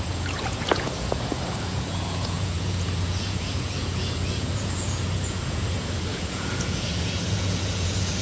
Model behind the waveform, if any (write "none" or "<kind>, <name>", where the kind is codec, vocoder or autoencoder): vocoder, Vocos